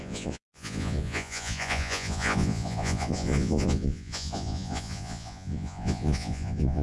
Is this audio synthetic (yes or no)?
yes